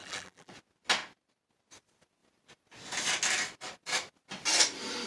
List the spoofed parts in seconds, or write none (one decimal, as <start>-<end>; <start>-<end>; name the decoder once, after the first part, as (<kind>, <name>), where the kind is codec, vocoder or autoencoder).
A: 0.0-0.5 (vocoder, BigVGAN v2)